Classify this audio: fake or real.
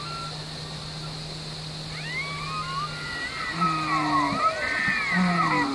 real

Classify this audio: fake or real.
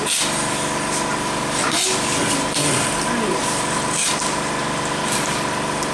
real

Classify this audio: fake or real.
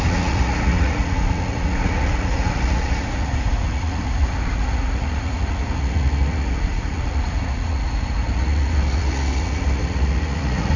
fake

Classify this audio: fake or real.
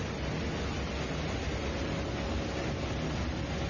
real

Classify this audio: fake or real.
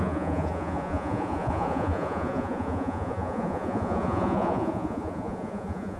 fake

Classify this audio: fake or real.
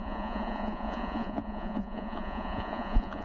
fake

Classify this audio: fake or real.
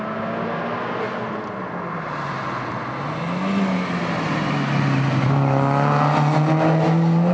real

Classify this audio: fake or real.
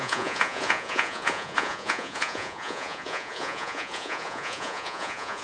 fake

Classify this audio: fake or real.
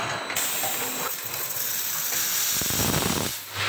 real